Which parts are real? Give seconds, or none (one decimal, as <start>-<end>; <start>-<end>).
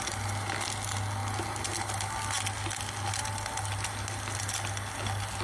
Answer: 0.0-5.4